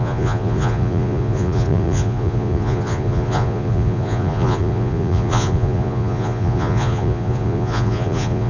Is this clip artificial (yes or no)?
yes